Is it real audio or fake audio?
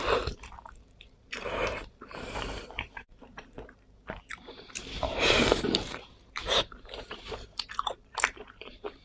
fake